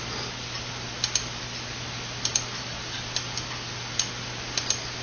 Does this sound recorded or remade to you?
recorded